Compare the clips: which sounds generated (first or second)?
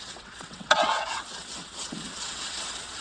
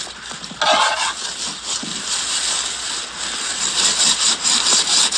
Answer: first